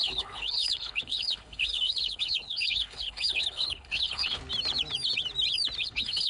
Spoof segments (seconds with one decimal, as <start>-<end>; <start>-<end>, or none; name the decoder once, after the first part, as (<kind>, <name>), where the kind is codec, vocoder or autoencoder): 0.0-4.4 (codec, HILCodec); 5.8-6.3